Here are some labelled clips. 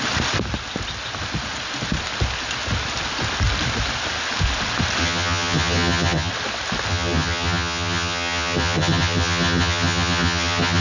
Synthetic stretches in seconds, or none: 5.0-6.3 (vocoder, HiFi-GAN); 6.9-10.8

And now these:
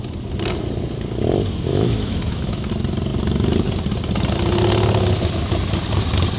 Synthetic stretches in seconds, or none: 1.7-2.7 (autoencoder, DAC-VAE)

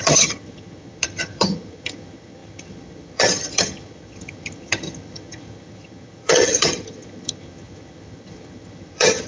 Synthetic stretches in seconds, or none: 0.0-9.3 (vocoder, HiFi-GAN)

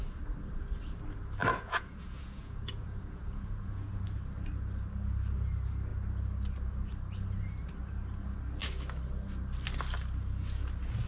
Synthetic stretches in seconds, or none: 1.5-4.0 (vocoder, Vocos)

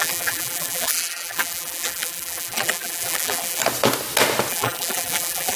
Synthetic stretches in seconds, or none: 0.0-3.6 (vocoder, BigVGAN v2); 4.5-5.6

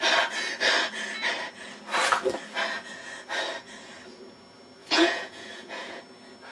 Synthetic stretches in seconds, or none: 4.8-6.0 (vocoder, Vocos)

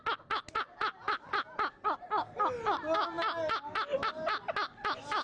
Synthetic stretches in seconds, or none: none